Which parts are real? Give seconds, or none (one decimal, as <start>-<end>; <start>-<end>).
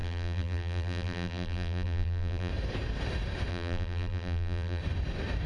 2.5-3.5; 4.8-5.5